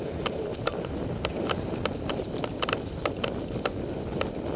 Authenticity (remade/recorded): recorded